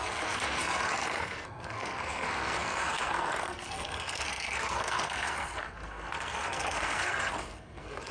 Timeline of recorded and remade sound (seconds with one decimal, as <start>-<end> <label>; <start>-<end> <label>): 0.0-8.1 remade